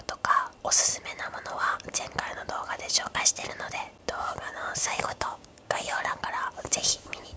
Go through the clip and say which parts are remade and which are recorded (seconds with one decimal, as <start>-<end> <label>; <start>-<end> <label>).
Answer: 0.0-4.8 recorded; 4.8-6.2 remade; 6.2-7.4 recorded